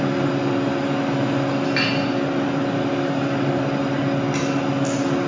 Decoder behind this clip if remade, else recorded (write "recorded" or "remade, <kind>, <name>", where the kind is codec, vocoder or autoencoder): recorded